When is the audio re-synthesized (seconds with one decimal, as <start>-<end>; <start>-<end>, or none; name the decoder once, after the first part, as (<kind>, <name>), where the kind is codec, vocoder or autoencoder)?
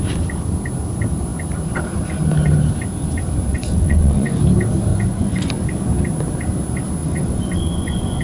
3.5-4.4 (vocoder, Vocos); 4.9-5.5; 7.0-8.2